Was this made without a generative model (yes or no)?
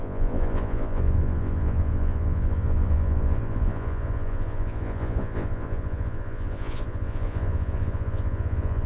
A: no